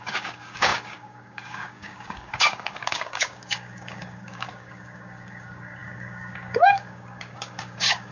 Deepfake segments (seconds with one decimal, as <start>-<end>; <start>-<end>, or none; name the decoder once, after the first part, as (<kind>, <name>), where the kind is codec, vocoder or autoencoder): 0.0-8.1 (codec, DAC)